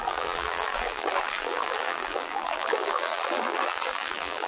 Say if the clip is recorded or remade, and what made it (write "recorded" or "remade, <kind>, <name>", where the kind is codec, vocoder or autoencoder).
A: remade, vocoder, BigVGAN v2